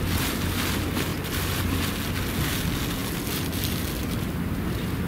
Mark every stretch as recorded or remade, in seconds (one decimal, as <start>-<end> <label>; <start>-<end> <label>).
0.0-1.1 recorded; 1.1-1.8 remade; 1.8-5.1 recorded